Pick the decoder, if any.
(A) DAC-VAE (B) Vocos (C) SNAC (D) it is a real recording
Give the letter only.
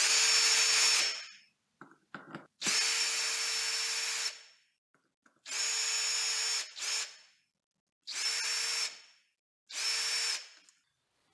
D